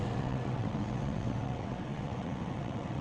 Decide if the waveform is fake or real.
fake